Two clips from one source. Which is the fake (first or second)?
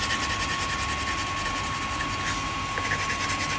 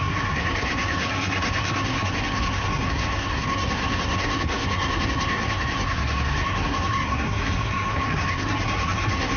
second